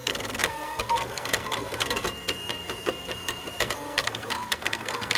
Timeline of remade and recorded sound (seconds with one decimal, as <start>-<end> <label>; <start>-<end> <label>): 0.0-5.2 remade